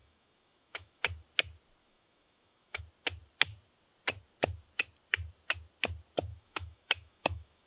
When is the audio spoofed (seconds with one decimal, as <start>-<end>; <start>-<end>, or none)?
0.0-1.0; 1.8-2.8; 6.3-7.7